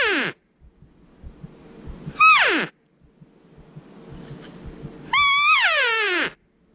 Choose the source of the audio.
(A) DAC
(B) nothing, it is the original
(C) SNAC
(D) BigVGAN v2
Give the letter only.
B